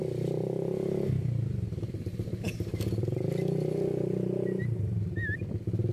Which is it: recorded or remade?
recorded